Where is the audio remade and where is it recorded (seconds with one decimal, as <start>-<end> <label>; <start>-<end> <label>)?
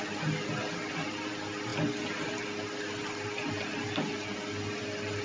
0.0-5.2 recorded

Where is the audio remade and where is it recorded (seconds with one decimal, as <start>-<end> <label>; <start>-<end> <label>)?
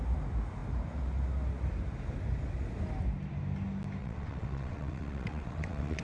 0.0-4.0 recorded; 4.0-6.0 remade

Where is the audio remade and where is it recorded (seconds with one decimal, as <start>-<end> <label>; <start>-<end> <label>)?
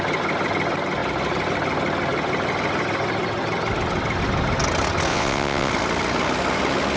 0.0-5.1 recorded; 5.1-5.7 remade; 5.7-7.0 recorded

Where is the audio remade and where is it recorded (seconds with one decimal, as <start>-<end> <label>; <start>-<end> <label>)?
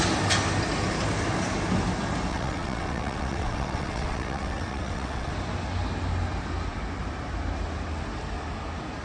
0.0-2.3 recorded; 2.3-5.3 remade; 5.3-9.0 recorded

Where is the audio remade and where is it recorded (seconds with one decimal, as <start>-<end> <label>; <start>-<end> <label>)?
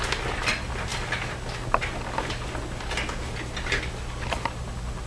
0.0-5.1 recorded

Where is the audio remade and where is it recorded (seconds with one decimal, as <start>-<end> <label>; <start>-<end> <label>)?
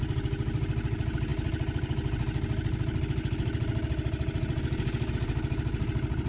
0.0-6.3 recorded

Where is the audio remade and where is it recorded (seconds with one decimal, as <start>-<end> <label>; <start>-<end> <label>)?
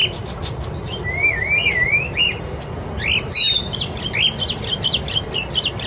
0.0-5.9 recorded